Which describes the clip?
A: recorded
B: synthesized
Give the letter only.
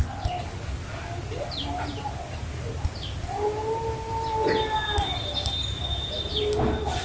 A